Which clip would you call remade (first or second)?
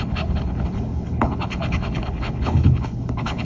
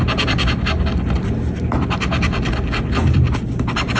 first